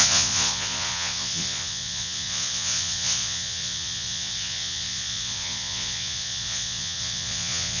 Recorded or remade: remade